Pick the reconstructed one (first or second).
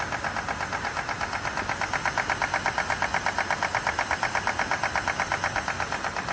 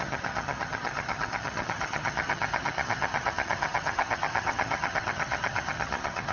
second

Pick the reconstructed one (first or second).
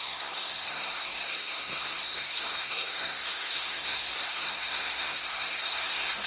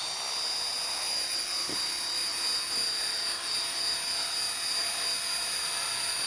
first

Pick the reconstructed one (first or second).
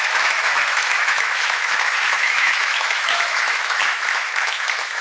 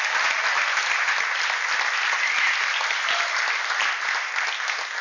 first